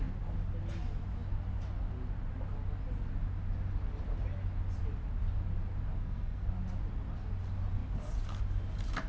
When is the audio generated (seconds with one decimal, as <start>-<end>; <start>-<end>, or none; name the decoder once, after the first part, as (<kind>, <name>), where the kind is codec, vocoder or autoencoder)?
6.0-6.5 (codec, SNAC)